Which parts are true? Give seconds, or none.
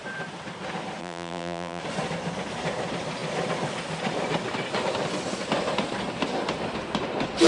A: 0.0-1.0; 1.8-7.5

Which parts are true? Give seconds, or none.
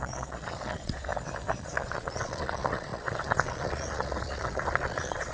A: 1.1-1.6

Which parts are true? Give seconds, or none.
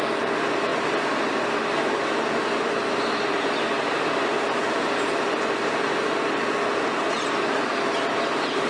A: 0.0-0.7; 4.1-8.7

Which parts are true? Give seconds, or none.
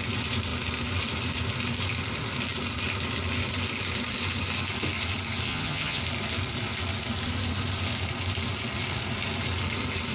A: 0.0-5.5; 6.0-10.1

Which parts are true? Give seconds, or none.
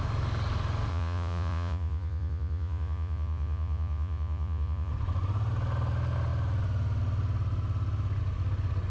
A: 0.0-0.9; 4.9-8.9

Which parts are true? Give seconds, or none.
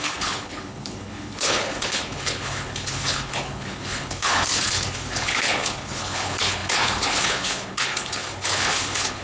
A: none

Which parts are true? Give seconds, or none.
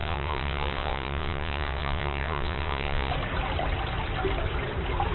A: 3.1-5.1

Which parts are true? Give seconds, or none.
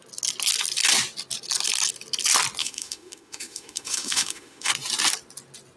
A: 0.0-2.6; 4.7-5.8